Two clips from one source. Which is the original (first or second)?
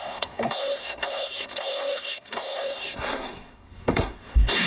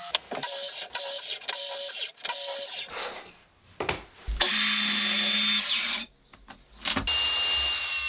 second